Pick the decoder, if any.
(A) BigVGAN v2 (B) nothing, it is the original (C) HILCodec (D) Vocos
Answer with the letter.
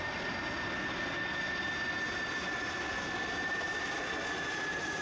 B